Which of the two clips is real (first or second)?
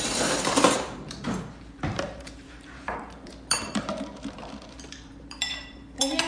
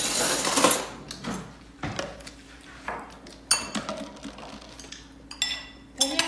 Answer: second